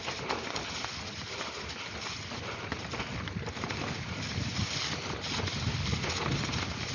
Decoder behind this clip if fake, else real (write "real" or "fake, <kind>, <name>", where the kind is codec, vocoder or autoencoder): real